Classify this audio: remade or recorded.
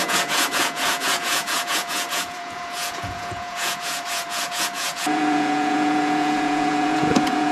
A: remade